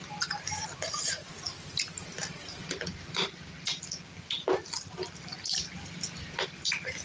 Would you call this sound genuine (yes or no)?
yes